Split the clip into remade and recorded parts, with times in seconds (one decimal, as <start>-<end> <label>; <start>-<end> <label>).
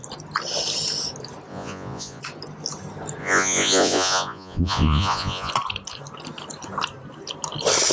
0.0-1.5 recorded; 1.5-2.2 remade; 2.2-3.2 recorded; 3.2-5.5 remade; 5.5-7.9 recorded